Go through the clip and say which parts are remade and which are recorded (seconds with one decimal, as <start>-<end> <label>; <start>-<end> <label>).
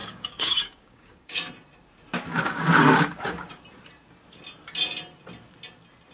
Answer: 0.0-1.5 remade; 1.5-2.3 recorded; 2.3-3.6 remade; 3.6-6.1 recorded